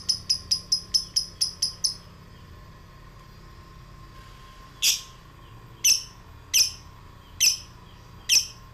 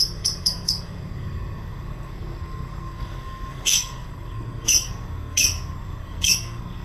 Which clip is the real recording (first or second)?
first